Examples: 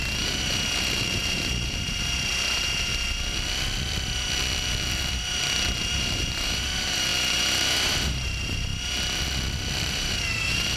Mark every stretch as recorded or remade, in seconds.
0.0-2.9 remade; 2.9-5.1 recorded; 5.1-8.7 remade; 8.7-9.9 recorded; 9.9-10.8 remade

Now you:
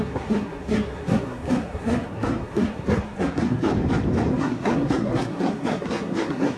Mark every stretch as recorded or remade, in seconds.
0.0-3.7 remade; 3.7-4.3 recorded; 4.3-6.6 remade

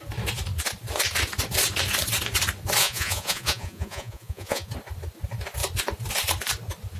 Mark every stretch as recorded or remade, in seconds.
0.0-2.8 recorded; 2.8-4.7 remade; 4.7-7.0 recorded